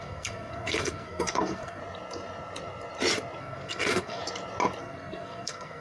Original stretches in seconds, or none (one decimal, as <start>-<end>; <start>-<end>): 1.8-3.4; 4.2-4.8